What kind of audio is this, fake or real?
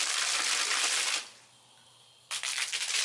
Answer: real